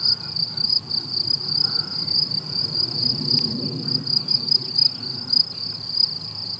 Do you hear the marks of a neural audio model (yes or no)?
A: no